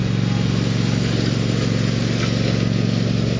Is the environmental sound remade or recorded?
recorded